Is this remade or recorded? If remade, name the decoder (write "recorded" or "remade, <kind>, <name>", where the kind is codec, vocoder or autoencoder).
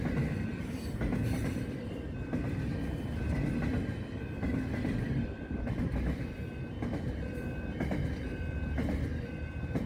recorded